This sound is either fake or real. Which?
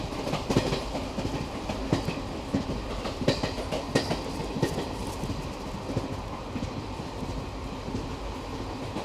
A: real